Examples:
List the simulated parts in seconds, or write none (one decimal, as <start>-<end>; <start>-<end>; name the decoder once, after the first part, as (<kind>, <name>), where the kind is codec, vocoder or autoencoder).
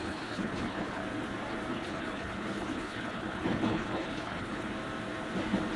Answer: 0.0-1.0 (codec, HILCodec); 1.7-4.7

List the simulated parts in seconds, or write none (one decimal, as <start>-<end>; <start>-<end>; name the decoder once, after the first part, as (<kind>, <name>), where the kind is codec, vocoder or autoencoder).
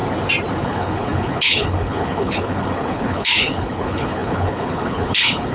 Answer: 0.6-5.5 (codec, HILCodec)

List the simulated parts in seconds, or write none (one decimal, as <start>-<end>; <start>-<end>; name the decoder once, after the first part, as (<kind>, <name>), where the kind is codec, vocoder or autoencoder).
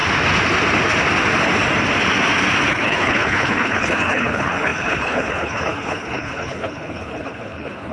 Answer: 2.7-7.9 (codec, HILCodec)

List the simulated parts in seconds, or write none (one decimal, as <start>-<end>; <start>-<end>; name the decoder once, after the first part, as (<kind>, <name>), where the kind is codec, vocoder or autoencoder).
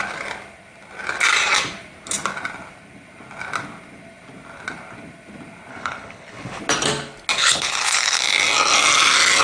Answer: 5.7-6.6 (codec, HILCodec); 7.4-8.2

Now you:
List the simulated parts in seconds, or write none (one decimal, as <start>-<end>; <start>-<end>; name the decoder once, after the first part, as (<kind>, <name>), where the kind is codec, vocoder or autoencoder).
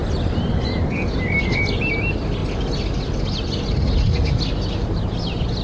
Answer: none